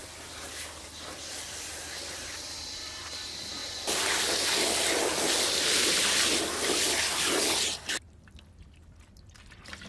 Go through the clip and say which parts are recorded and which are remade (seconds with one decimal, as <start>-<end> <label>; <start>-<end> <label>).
0.0-9.9 recorded